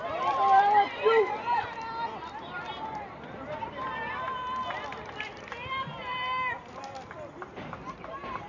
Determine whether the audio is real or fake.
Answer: fake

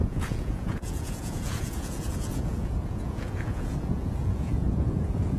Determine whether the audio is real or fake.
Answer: fake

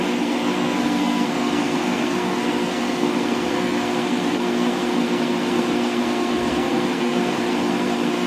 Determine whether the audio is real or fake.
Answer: fake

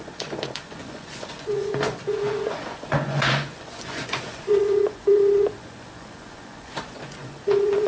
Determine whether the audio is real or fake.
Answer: fake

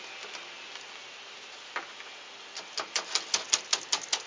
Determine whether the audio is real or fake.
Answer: real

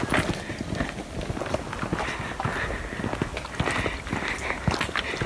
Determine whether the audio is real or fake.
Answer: real